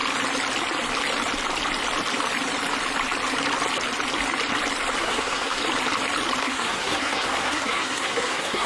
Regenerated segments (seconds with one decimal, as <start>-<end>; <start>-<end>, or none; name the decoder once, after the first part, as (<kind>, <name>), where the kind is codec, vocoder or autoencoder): 5.0-5.6 (codec, SNAC); 6.4-8.7